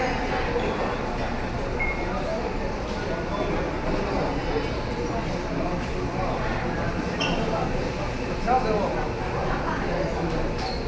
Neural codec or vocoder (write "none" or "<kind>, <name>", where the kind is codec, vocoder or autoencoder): none